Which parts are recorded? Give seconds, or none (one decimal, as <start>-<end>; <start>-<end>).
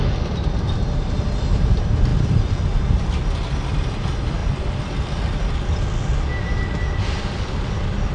0.0-2.1; 3.0-4.4; 5.0-8.1